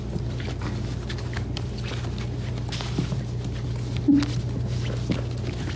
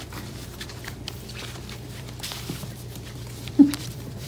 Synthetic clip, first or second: second